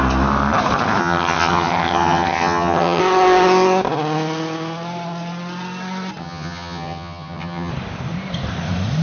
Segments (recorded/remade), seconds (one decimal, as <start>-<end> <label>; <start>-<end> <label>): 0.0-1.0 recorded; 1.0-3.0 remade; 3.0-6.2 recorded; 6.2-7.7 remade; 7.7-9.0 recorded